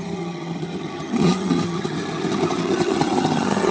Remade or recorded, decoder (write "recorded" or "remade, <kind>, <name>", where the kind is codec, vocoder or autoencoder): remade, vocoder, HiFi-GAN